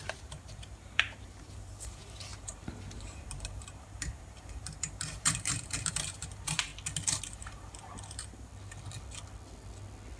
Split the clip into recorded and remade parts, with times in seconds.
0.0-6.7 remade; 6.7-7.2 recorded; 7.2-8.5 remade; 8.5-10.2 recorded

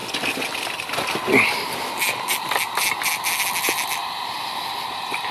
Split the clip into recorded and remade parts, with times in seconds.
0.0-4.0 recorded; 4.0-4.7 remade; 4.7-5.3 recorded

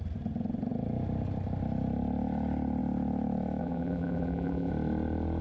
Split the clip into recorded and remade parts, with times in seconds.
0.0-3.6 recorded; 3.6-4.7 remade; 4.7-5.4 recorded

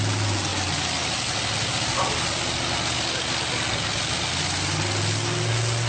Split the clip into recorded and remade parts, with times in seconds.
0.0-5.9 recorded

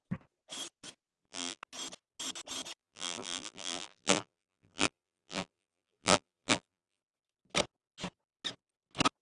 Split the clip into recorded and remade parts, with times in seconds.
0.0-1.1 recorded; 1.1-1.6 remade; 1.6-2.8 recorded; 2.8-7.0 remade; 7.0-9.2 recorded